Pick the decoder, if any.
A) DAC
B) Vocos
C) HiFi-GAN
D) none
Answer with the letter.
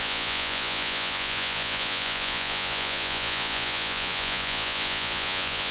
B